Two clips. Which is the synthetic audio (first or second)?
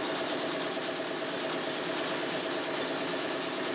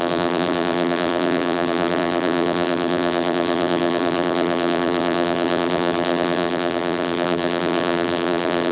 second